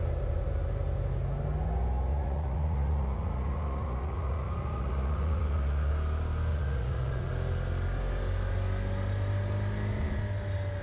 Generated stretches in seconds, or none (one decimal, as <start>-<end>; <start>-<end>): 2.1-5.9; 6.5-7.3